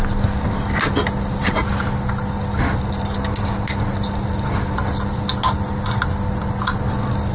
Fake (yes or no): no